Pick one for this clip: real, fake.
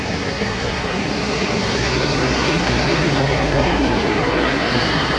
fake